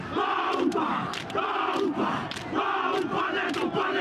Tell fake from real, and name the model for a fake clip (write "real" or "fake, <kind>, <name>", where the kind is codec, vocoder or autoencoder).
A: real